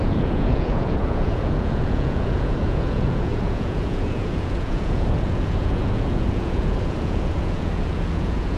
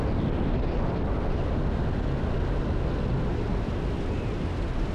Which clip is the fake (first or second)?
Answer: first